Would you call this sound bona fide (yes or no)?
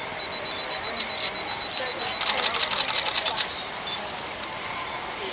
yes